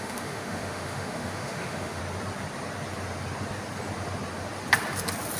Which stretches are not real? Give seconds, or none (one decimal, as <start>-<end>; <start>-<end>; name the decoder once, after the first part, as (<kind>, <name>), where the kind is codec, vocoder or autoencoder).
0.0-2.0 (autoencoder, DAC-VAE)